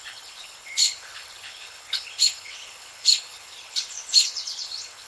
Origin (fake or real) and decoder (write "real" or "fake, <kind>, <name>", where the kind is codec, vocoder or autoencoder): fake, codec, HILCodec